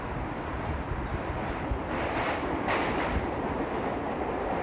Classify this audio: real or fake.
real